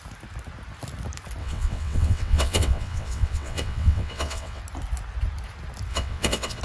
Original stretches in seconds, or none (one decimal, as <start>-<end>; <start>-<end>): 0.0-1.4; 4.6-5.9